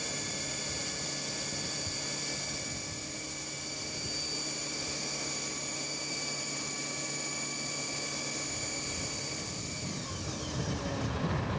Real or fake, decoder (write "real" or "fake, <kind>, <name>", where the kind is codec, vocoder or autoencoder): real